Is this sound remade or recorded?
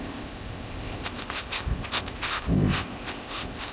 remade